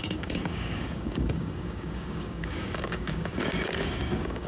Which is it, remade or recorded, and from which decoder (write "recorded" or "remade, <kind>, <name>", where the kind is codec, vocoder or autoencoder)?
remade, codec, DAC